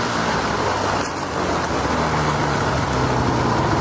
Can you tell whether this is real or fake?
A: real